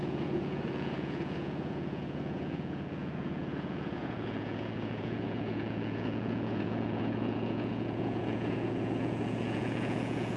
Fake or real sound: fake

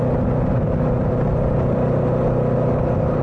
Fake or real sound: real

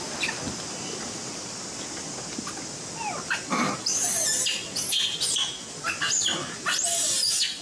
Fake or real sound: real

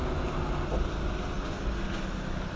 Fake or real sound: real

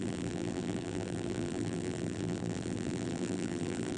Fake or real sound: fake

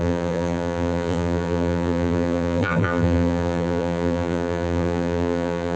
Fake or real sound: fake